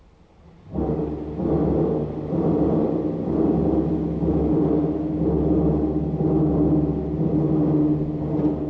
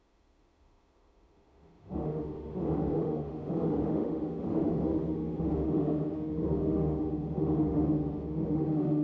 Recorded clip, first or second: first